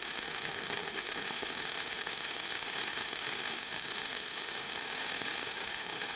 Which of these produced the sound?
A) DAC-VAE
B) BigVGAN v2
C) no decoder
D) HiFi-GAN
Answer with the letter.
A